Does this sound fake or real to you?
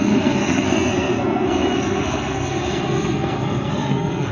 fake